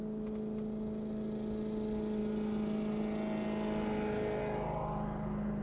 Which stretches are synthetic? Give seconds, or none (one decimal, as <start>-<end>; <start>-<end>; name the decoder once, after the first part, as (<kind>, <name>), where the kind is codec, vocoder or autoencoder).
none